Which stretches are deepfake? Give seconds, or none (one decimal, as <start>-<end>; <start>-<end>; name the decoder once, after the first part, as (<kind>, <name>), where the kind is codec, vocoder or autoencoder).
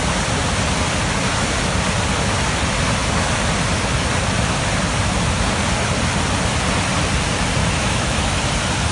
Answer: 7.6-8.5 (autoencoder, DAC-VAE)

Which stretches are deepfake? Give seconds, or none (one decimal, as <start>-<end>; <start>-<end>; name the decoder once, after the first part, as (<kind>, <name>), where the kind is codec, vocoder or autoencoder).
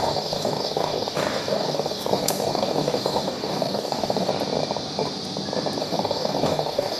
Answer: 0.0-4.3 (codec, DAC); 5.8-7.0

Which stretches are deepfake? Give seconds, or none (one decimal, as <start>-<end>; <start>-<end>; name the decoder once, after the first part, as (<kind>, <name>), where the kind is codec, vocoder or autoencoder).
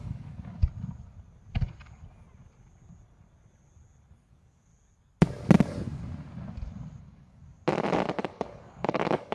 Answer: 0.0-0.6 (codec, DAC); 4.3-4.7; 7.0-7.4; 8.2-9.3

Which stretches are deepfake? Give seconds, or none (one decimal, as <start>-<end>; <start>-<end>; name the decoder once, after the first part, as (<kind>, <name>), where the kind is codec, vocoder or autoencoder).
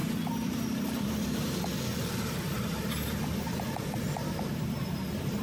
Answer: 0.0-3.2 (vocoder, BigVGAN v2)